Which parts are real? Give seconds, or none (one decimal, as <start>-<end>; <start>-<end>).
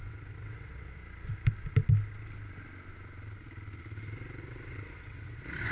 1.0-4.4